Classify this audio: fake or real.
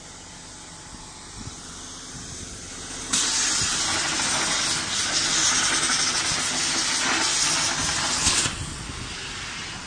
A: real